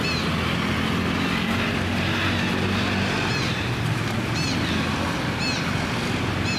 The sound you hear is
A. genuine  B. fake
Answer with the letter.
A